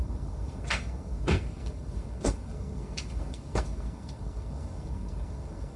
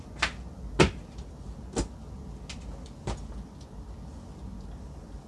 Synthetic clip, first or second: first